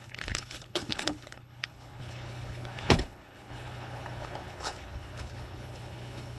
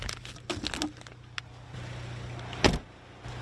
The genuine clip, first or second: second